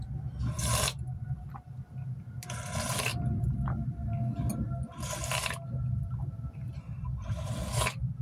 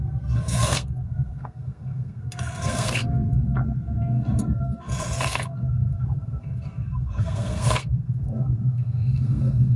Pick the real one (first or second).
first